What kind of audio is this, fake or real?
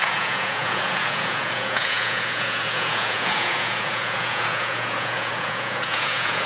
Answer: fake